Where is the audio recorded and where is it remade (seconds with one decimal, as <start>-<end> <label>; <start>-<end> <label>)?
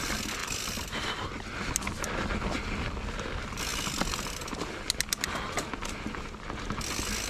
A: 0.0-7.3 recorded